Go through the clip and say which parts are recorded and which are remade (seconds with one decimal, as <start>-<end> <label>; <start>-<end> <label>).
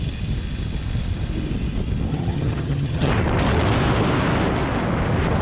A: 0.0-2.1 recorded; 2.1-3.1 remade; 3.1-5.4 recorded